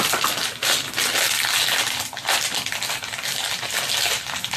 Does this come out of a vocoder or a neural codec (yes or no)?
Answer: no